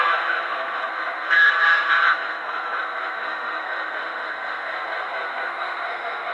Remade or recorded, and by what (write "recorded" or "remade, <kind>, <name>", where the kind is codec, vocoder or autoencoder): remade, codec, SNAC